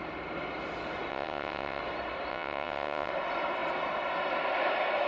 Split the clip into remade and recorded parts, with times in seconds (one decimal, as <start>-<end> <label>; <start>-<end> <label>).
0.0-1.1 recorded; 1.1-1.8 remade; 1.8-2.3 recorded; 2.3-3.1 remade; 3.1-5.1 recorded